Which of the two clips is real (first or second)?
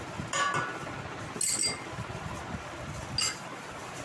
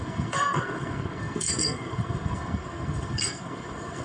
first